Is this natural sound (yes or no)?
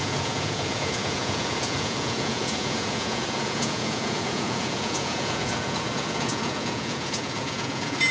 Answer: no